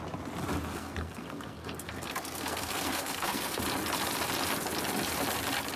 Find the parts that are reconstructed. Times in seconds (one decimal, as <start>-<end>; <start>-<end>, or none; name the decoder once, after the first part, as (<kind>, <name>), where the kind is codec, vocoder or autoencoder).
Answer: 0.7-3.6 (codec, SNAC)